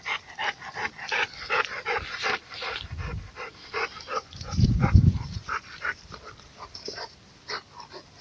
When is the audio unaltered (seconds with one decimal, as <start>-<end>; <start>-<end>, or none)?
0.0-4.1; 5.7-8.2